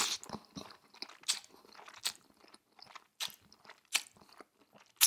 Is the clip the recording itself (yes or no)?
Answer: yes